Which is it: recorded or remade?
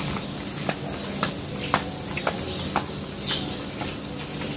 recorded